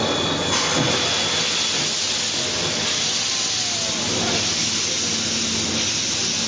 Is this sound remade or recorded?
recorded